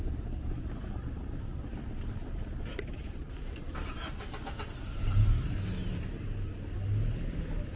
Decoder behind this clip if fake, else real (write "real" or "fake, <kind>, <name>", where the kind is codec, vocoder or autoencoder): real